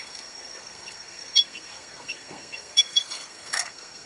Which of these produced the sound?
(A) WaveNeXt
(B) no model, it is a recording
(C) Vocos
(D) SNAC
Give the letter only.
D